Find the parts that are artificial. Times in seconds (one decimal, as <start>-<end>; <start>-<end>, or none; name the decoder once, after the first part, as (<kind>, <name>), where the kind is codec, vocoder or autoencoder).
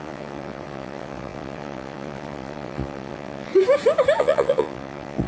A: 0.0-3.5 (vocoder, WaveNeXt); 4.2-5.3